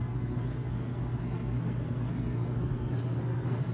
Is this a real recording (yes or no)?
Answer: no